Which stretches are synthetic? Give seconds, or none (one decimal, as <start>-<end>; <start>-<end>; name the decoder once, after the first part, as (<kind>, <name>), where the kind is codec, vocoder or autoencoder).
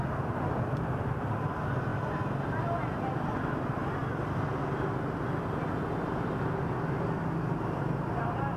none